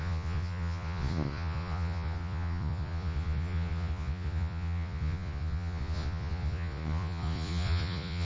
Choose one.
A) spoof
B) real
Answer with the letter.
A